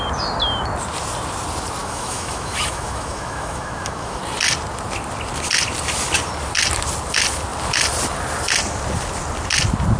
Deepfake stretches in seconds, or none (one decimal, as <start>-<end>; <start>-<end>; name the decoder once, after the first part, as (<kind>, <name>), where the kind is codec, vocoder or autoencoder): 1.8-4.2 (autoencoder, DAC-VAE)